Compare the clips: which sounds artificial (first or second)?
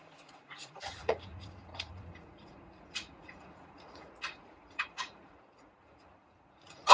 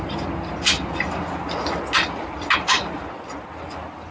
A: first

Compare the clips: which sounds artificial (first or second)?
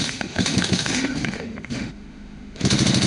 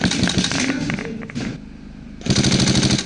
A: first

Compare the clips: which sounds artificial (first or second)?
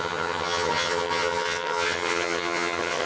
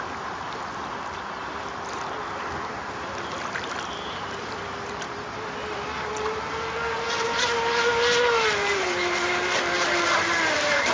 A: first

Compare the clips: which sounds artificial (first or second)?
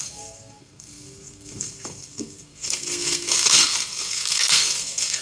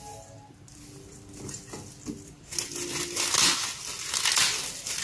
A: first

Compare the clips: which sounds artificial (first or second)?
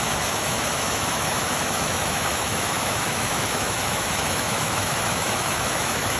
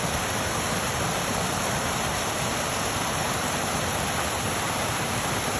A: first